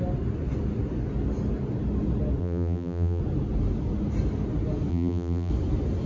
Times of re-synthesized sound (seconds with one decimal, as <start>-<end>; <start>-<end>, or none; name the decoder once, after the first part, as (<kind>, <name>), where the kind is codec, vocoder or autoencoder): 2.4-3.2 (vocoder, BigVGAN v2); 4.9-5.5

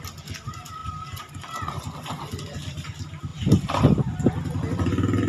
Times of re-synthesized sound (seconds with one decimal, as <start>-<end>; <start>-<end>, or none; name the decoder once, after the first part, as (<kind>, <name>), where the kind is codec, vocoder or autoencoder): 3.3-4.0 (vocoder, BigVGAN v2)